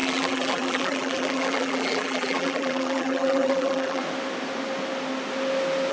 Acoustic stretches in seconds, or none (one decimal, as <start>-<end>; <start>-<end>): 4.0-5.9